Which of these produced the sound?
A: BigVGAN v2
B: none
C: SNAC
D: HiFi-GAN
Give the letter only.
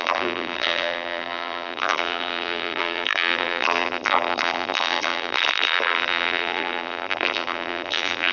A